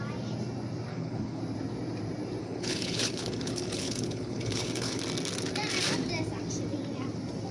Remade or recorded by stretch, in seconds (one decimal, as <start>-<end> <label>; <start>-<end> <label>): 0.0-0.9 recorded; 0.9-1.4 remade; 1.4-2.4 recorded; 2.4-5.0 remade; 5.0-7.5 recorded